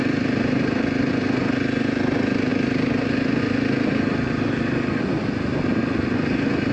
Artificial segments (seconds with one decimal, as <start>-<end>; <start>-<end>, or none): 0.0-1.1; 5.1-5.8